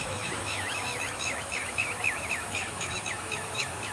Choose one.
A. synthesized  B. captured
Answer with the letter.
A